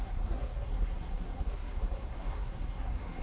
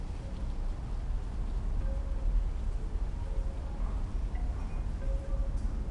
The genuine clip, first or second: second